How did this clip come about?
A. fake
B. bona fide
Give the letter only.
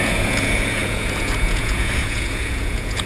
A